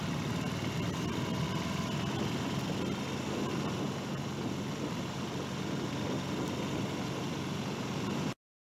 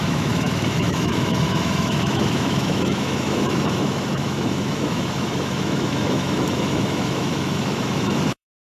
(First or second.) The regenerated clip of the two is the second